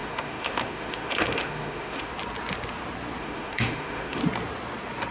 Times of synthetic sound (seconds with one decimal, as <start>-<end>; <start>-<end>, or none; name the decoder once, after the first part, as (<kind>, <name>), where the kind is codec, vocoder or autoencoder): 0.0-2.1 (autoencoder, DAC-VAE); 3.2-4.2